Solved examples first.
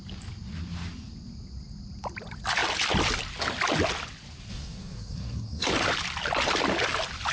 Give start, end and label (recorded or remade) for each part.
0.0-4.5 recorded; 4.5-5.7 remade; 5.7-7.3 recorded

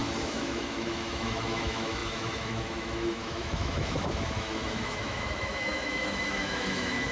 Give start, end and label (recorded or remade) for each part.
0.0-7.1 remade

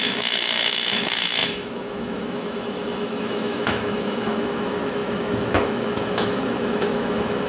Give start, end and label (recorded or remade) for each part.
0.0-7.5 remade

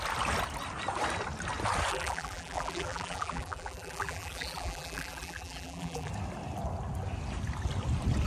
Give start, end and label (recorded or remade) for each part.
0.0-1.9 recorded; 1.9-6.1 remade; 6.1-8.3 recorded